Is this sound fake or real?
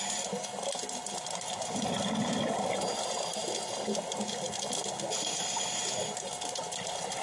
real